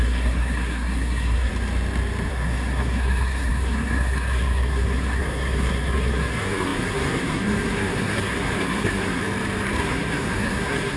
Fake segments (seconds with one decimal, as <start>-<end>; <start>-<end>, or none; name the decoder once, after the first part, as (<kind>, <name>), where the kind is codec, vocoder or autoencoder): 0.0-1.5 (codec, SNAC); 2.3-9.2; 9.8-11.0